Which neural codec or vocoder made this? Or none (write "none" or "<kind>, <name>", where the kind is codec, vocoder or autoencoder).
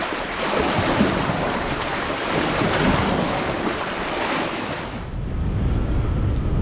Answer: none